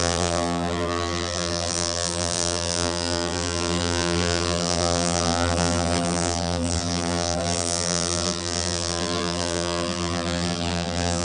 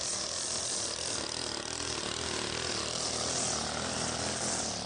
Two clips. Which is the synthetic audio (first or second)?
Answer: first